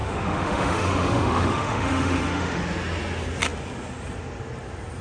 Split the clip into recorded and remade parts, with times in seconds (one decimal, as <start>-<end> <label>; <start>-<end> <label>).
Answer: 0.0-2.6 remade; 2.6-5.0 recorded